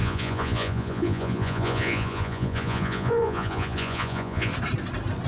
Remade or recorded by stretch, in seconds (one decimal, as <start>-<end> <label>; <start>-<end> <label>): 0.0-4.5 remade; 4.5-5.3 recorded